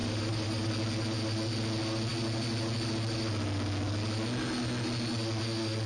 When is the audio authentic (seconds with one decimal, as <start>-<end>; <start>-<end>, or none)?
0.7-5.9